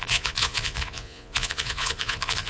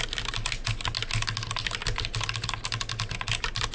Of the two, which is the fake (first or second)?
first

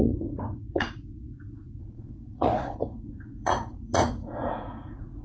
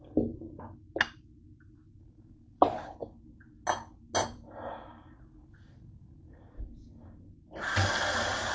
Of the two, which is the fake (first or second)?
first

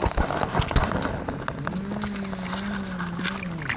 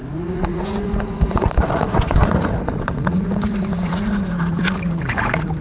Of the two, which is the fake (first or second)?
second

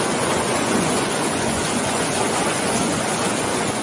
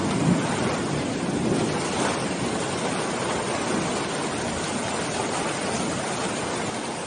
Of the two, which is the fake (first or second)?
first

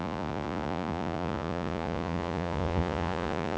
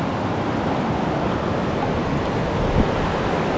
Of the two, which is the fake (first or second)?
first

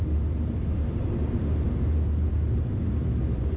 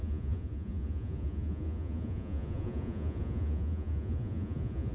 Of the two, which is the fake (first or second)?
second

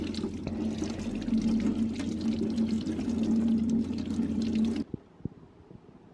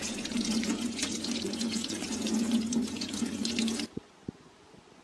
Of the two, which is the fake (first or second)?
second